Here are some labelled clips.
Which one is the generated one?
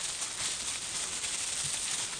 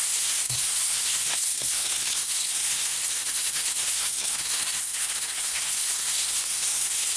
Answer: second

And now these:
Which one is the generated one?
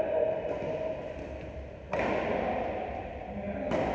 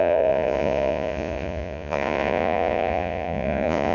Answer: second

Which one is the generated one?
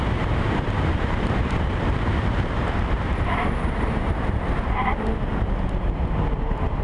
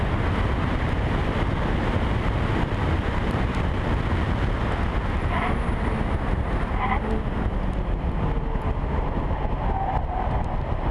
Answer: first